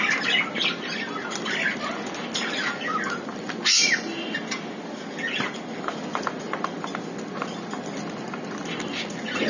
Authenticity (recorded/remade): recorded